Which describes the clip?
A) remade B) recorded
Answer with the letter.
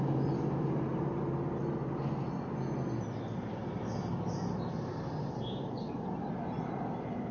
B